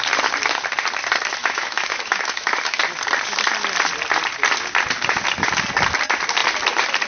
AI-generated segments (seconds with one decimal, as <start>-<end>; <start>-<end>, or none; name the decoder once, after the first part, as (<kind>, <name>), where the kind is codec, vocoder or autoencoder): 1.4-2.8 (autoencoder, DAC-VAE)